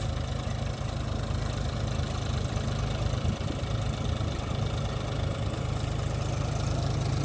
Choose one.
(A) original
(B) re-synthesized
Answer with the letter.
A